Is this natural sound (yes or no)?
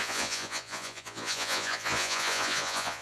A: no